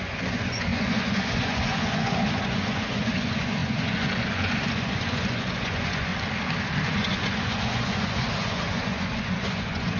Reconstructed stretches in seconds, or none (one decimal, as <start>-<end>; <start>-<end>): 0.0-6.1; 6.9-10.0